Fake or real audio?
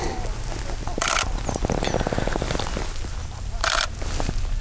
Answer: real